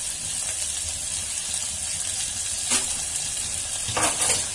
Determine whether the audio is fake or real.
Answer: real